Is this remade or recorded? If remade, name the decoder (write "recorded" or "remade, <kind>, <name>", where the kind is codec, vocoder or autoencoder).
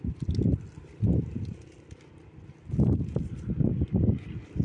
recorded